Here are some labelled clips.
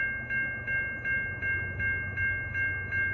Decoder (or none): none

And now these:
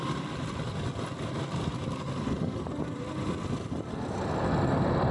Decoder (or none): none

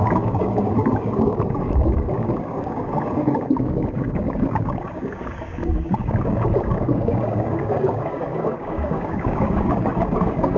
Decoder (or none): codec, DAC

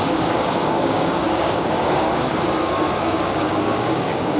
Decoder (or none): codec, DAC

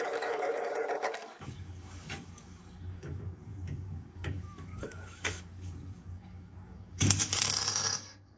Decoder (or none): codec, DAC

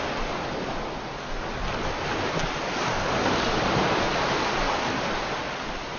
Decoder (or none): none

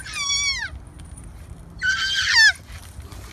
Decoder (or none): none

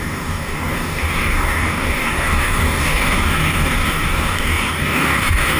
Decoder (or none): codec, DAC